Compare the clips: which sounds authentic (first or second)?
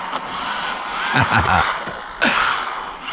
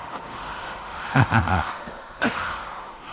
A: first